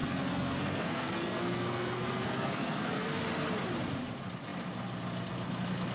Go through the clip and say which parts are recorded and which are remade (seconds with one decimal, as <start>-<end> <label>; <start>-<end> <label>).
0.0-3.2 remade; 3.2-5.9 recorded